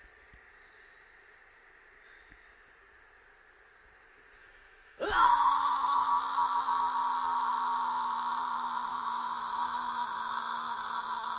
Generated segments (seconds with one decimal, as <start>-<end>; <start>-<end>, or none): 4.4-6.1; 8.9-11.0